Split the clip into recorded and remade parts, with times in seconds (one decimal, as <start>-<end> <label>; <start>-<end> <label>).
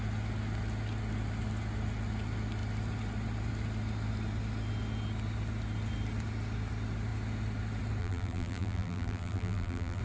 0.0-8.0 recorded; 8.0-10.0 remade